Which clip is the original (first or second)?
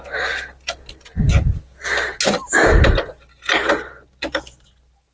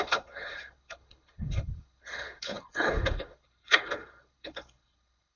first